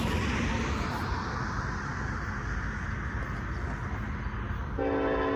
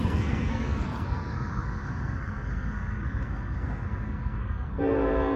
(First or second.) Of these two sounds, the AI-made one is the second